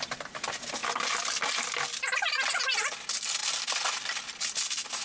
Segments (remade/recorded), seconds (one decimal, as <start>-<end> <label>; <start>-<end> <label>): 0.0-5.0 recorded